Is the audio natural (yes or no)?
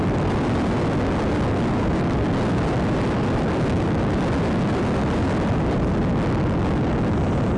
yes